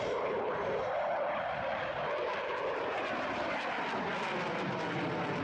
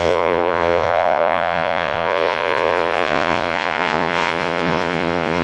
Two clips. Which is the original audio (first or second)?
first